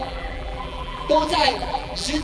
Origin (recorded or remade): remade